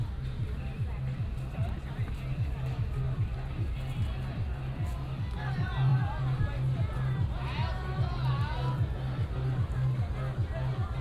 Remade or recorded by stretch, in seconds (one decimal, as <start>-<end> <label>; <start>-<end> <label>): 0.0-11.0 recorded